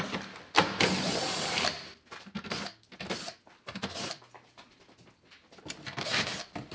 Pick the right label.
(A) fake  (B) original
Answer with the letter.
B